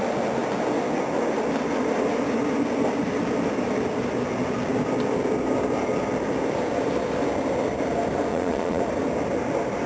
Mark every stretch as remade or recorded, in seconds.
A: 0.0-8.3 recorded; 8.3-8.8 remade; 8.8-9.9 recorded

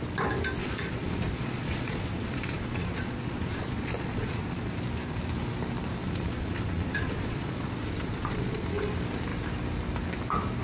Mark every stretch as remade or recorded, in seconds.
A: 0.0-0.6 recorded; 0.6-4.7 remade; 4.7-6.0 recorded; 6.0-8.9 remade; 8.9-10.6 recorded